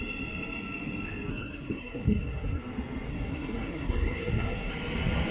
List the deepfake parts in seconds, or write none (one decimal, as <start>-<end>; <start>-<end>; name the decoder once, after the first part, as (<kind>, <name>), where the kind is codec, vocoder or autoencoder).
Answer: 1.3-2.6 (codec, SNAC); 3.1-4.7